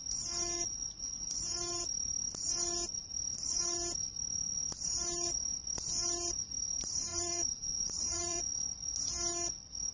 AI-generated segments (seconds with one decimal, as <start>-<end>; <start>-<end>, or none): 7.1-8.4